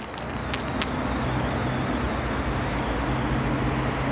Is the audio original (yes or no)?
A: yes